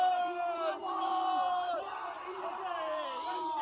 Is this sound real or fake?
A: fake